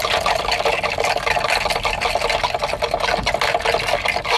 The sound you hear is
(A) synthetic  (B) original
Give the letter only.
B